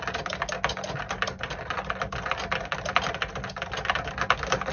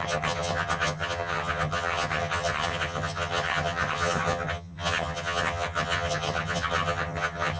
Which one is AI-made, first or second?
second